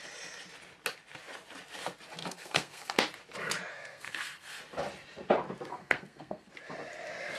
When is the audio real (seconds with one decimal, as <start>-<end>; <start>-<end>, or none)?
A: 0.0-2.2; 3.0-3.7; 4.6-5.7; 6.5-7.4